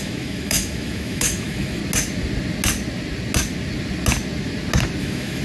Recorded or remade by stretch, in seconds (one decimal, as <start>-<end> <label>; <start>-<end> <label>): 0.0-1.8 remade; 1.8-5.0 recorded; 5.0-5.4 remade